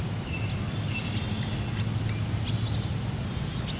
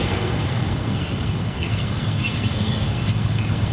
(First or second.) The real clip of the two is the first